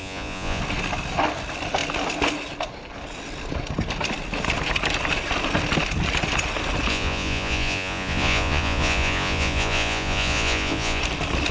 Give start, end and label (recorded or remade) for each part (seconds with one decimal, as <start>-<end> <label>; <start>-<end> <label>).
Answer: 0.0-0.6 remade; 0.6-6.9 recorded; 6.9-11.0 remade; 11.0-11.5 recorded